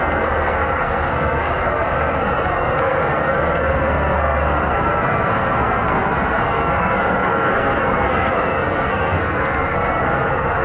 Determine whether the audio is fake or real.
fake